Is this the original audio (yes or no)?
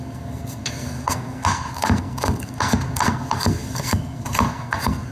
no